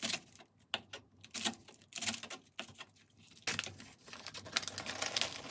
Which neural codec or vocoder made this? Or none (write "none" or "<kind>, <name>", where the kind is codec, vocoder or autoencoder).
none